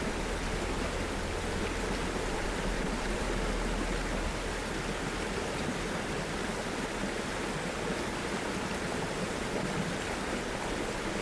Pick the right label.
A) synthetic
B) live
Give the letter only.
B